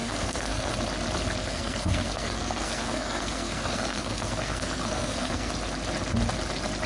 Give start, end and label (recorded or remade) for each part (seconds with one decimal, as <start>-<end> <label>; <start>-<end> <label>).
0.0-0.7 remade; 0.7-1.4 recorded; 1.4-5.5 remade; 5.5-6.9 recorded